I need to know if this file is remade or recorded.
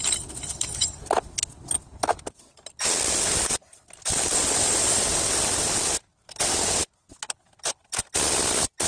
recorded